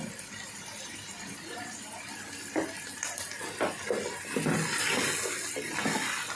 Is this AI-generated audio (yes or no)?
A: no